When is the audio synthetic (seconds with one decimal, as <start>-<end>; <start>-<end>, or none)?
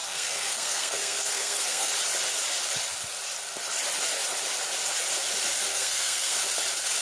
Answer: 0.0-1.9; 5.7-6.4